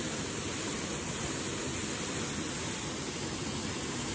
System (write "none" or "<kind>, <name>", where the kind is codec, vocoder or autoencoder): none